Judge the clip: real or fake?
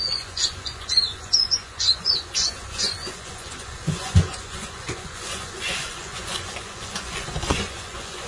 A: fake